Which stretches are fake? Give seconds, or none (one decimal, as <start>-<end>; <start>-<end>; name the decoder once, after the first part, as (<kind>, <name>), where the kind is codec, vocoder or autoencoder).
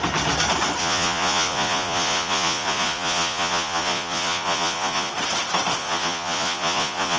0.8-5.1 (vocoder, Vocos); 5.8-7.2